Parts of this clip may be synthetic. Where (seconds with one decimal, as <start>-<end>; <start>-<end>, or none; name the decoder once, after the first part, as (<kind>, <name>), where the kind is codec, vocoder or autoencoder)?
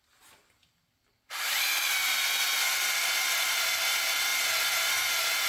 none